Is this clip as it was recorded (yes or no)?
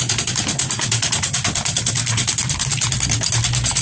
yes